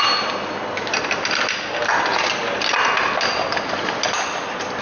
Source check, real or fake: real